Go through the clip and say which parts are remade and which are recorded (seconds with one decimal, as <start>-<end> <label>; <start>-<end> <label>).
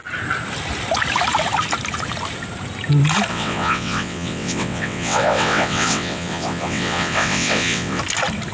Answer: 0.0-3.3 recorded; 3.3-8.0 remade; 8.0-8.5 recorded